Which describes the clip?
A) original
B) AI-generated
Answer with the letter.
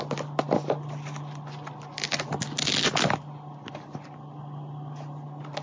A